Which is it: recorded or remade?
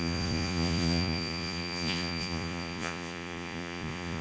remade